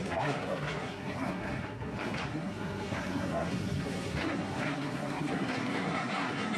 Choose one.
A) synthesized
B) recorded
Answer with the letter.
A